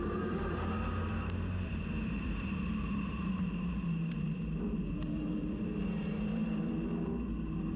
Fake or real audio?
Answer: fake